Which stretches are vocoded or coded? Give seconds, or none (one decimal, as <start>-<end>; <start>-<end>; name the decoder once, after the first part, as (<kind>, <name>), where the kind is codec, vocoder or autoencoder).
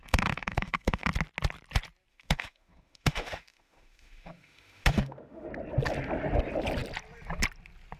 0.0-1.1 (autoencoder, DAC-VAE); 2.1-5.5